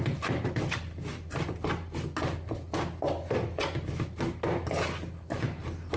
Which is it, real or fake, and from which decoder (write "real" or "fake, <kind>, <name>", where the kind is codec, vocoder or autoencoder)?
real